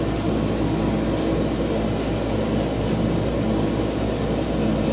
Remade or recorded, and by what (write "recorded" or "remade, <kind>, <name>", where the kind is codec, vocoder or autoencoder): recorded